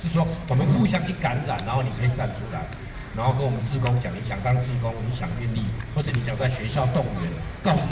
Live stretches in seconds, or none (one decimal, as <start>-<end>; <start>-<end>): 3.0-5.8